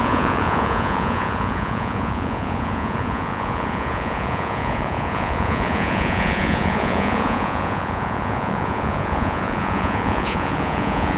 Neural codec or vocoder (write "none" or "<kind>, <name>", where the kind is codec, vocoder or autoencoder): vocoder, Vocos